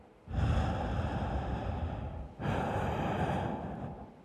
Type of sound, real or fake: real